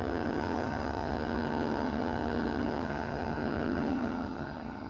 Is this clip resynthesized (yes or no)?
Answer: yes